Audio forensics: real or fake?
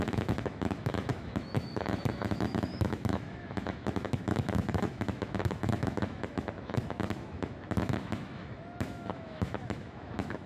fake